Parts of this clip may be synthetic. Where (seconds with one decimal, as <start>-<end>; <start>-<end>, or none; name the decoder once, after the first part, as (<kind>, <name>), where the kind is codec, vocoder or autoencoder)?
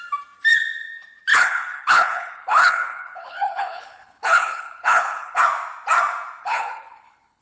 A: 1.3-5.4 (codec, HILCodec); 6.4-7.4